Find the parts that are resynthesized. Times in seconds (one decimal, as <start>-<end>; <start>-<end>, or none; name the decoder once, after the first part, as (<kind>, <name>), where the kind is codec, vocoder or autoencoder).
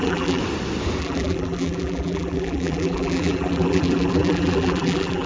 0.0-0.4 (vocoder, BigVGAN v2); 1.0-5.3